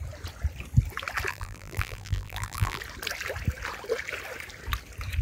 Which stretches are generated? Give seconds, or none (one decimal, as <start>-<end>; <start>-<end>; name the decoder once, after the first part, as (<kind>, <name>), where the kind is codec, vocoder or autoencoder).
1.3-2.8 (vocoder, BigVGAN v2)